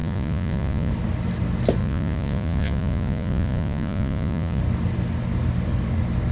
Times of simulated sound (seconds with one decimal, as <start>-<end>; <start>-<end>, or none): 0.0-0.9; 1.8-4.6